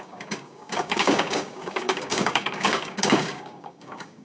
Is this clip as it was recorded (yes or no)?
no